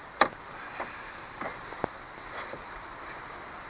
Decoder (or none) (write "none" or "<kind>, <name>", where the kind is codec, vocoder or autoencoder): none